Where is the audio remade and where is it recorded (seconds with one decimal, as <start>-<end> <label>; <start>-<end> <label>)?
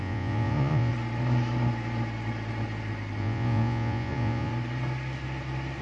0.0-0.9 remade; 0.9-3.2 recorded; 3.2-4.5 remade; 4.5-5.8 recorded